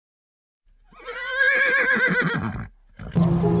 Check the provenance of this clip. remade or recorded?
recorded